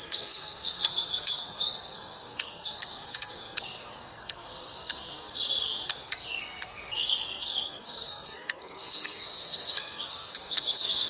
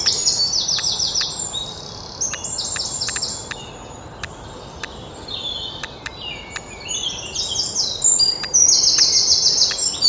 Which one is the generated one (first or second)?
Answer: first